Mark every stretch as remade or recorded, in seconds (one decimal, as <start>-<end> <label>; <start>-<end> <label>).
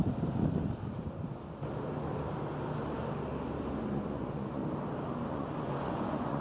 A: 0.0-3.8 recorded; 3.8-4.6 remade; 4.6-5.3 recorded; 5.3-6.4 remade